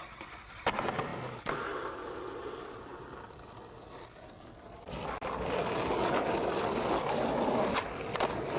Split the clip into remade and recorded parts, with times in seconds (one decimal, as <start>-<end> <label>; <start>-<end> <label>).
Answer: 0.0-8.6 recorded